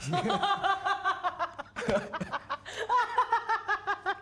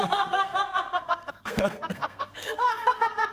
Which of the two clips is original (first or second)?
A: first